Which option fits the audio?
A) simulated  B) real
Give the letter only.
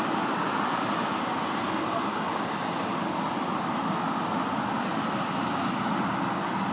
B